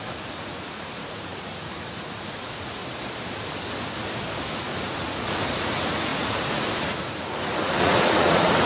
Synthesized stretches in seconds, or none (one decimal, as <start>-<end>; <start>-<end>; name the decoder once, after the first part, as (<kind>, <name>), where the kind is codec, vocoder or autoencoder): 0.0-2.8 (vocoder, Vocos); 4.5-8.7